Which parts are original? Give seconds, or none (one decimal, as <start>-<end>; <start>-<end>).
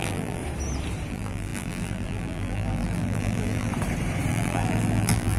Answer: 0.4-1.1; 3.7-4.3